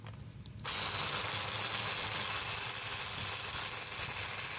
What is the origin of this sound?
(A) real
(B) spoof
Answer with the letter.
A